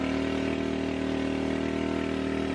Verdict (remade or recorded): recorded